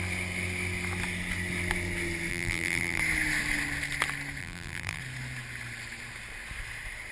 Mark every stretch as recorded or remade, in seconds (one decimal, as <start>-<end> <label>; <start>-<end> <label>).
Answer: 0.0-2.3 recorded; 2.3-3.0 remade; 3.0-4.4 recorded; 4.4-5.0 remade; 5.0-7.1 recorded